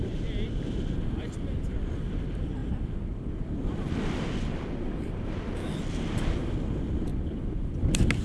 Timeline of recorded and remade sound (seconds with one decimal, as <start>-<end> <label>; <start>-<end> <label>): 0.0-7.1 recorded; 7.1-7.7 remade; 7.7-8.2 recorded